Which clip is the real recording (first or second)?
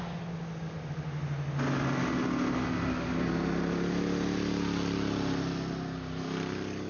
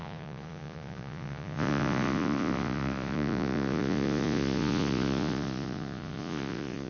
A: first